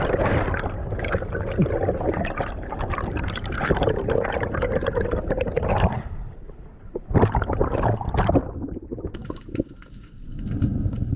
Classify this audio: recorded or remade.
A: recorded